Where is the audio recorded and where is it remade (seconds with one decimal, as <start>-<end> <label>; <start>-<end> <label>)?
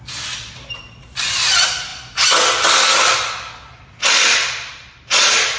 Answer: 0.0-5.6 recorded